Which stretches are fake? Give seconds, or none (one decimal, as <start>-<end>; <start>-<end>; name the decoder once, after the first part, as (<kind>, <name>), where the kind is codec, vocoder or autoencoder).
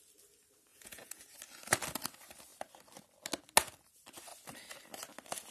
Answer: 0.7-1.2 (vocoder, Vocos)